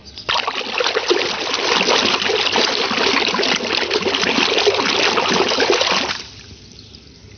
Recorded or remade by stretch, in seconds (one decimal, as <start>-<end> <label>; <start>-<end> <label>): 0.0-7.4 recorded